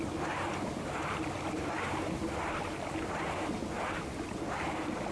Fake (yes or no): no